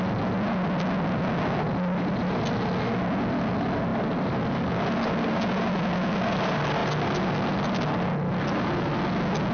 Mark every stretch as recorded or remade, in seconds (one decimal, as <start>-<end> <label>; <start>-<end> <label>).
0.0-9.5 recorded